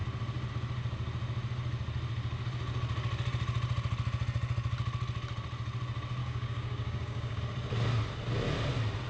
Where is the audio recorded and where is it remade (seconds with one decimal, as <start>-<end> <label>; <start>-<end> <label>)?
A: 0.0-6.2 recorded; 6.2-7.4 remade; 7.4-9.1 recorded